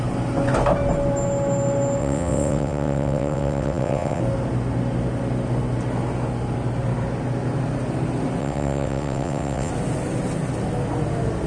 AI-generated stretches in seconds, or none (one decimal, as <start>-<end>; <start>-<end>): 2.0-4.2; 8.4-9.7